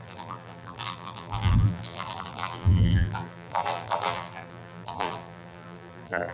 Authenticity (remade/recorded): remade